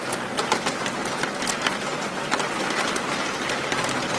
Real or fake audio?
real